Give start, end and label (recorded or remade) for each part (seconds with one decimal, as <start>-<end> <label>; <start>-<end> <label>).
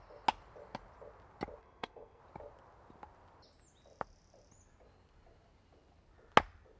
0.0-1.6 recorded; 1.6-2.2 remade; 2.2-6.8 recorded